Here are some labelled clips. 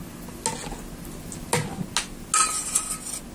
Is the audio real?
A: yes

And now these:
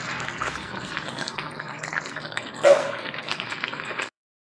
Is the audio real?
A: no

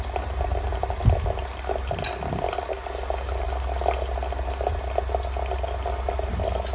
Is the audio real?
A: yes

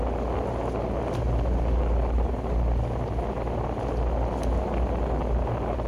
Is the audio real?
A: yes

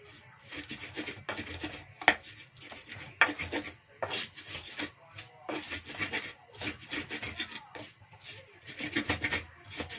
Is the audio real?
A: yes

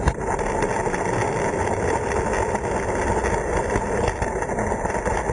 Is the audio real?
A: yes